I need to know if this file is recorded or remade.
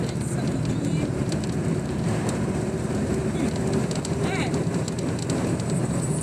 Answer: remade